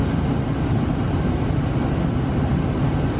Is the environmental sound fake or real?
real